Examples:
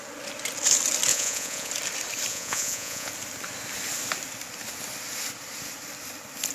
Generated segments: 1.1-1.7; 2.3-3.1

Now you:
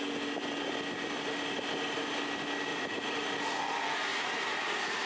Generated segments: 2.7-3.2; 4.1-5.1

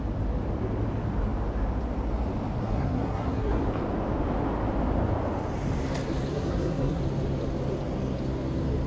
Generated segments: 2.6-3.6; 6.3-7.0

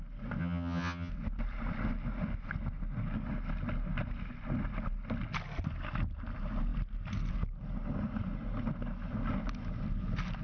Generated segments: 0.4-1.1

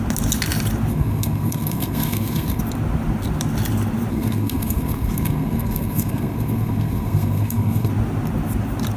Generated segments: 0.9-2.6; 4.1-7.9

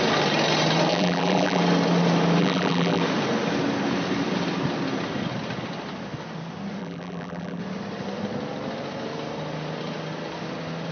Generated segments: 0.9-1.6; 2.4-3.0; 6.8-7.6